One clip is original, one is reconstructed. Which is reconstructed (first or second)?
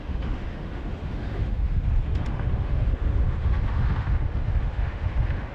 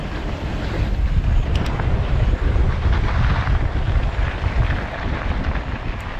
first